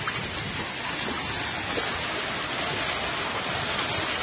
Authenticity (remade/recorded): recorded